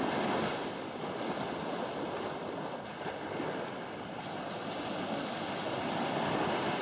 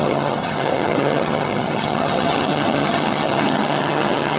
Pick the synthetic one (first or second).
second